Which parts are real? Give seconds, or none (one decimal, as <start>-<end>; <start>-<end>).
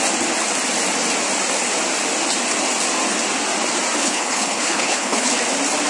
0.0-4.0; 5.3-5.9